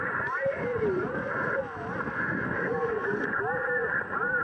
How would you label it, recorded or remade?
remade